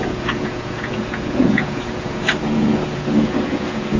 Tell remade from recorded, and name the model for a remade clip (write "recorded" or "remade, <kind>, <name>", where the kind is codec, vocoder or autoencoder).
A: remade, vocoder, Vocos